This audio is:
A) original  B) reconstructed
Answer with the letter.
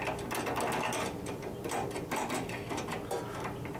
A